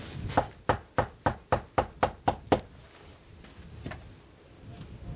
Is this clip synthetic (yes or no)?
no